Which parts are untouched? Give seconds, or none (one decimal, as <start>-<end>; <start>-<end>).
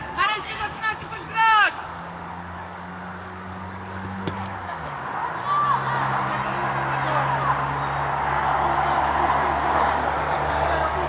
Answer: 5.2-10.2